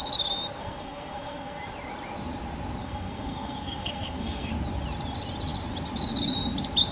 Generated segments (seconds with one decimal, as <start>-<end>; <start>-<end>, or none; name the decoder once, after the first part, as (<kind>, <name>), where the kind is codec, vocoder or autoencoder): 0.6-1.6 (codec, SNAC); 2.8-4.5